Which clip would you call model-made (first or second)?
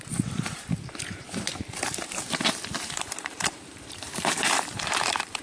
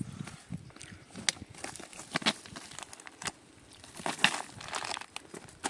first